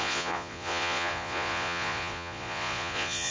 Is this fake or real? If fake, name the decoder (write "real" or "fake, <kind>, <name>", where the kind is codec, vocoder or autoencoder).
fake, vocoder, Vocos